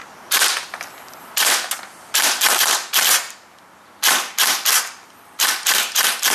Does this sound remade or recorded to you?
remade